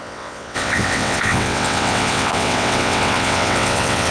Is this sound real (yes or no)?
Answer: no